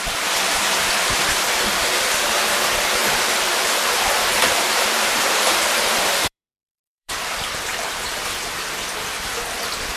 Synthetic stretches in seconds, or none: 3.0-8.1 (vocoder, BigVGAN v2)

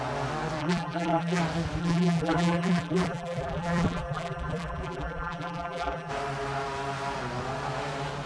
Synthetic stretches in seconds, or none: 0.6-1.4 (vocoder, BigVGAN v2); 1.8-6.1

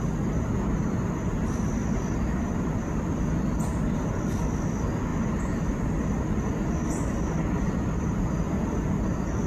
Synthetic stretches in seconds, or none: none

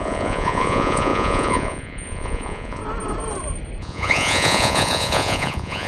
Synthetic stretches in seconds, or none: 0.0-2.8 (vocoder, Vocos); 3.8-5.9

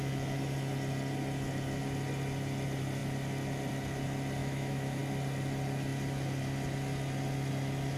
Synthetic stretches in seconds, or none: 4.4-5.0 (autoencoder, DAC-VAE)

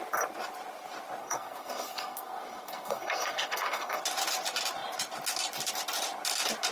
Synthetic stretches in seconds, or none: 1.2-4.0 (codec, SNAC)

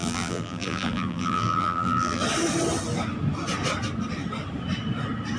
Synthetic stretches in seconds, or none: 0.0-2.2 (vocoder, BigVGAN v2)

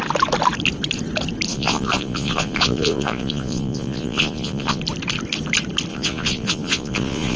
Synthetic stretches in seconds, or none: 1.5-4.8 (vocoder, Vocos); 5.9-7.4